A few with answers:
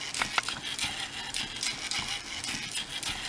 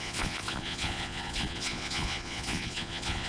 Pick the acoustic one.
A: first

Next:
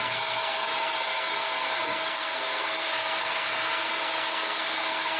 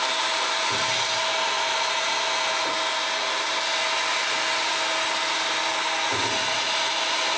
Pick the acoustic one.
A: second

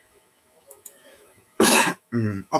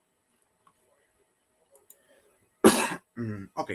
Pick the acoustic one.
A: second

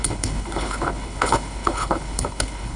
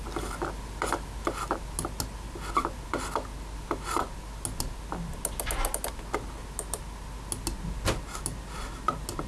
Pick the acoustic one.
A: second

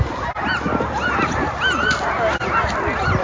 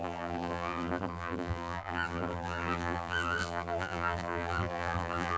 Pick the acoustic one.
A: first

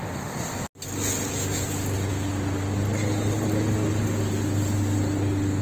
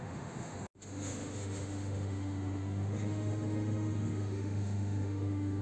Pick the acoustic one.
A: first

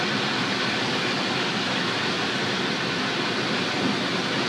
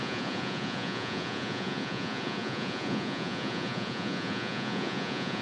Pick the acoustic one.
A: first